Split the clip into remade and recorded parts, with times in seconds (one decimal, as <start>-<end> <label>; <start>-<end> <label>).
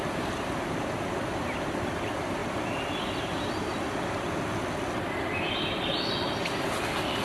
0.0-7.2 recorded